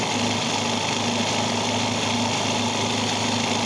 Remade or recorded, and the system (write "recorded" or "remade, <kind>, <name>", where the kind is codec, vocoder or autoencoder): recorded